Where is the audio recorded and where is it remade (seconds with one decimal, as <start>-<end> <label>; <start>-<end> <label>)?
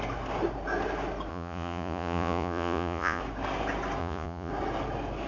0.0-1.3 recorded; 1.3-3.2 remade; 3.2-4.0 recorded; 4.0-4.5 remade; 4.5-5.3 recorded